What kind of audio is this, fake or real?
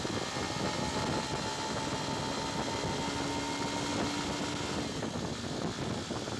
real